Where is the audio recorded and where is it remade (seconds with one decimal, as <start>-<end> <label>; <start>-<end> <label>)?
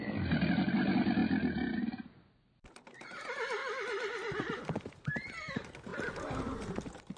0.0-3.6 recorded; 3.6-4.6 remade; 4.6-5.9 recorded; 5.9-6.4 remade; 6.4-7.2 recorded